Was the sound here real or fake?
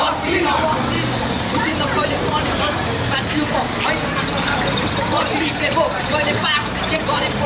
fake